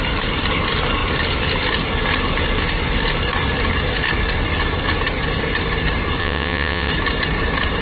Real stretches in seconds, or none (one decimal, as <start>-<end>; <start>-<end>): 0.0-6.2; 6.9-7.8